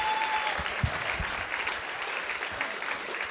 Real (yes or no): yes